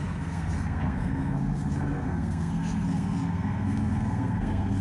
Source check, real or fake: fake